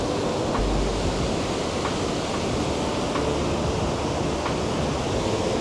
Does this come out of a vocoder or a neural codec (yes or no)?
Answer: no